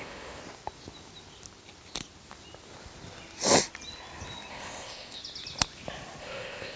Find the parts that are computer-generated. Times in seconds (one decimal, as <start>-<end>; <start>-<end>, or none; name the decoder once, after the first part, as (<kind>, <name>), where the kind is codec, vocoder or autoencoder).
0.0-0.4 (codec, ZipCodec); 4.5-5.2; 6.2-6.8